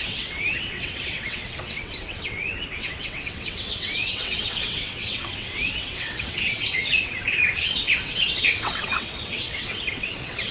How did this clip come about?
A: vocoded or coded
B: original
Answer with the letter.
A